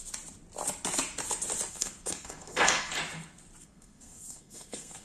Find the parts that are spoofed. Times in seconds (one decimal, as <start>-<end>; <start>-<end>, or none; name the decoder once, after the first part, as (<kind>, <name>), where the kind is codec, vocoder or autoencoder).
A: 1.7-2.9 (codec, SNAC); 3.6-5.0